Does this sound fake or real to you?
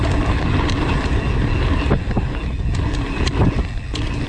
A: real